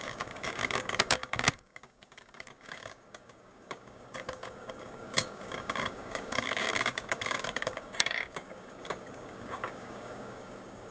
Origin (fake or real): fake